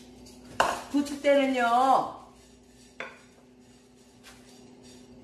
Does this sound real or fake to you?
real